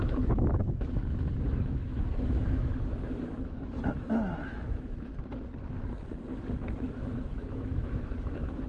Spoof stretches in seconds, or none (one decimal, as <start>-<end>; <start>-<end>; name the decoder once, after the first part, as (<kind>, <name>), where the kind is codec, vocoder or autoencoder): 0.0-5.1 (autoencoder, DAC-VAE); 6.7-8.7